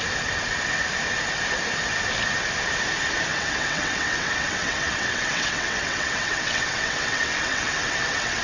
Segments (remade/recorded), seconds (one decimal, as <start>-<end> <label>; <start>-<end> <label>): 0.0-3.3 recorded; 3.3-8.4 remade